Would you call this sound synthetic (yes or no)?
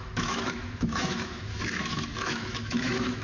yes